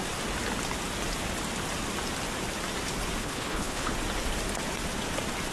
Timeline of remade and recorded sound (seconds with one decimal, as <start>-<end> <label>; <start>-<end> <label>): 0.0-3.2 recorded; 3.2-3.9 remade; 3.9-5.5 recorded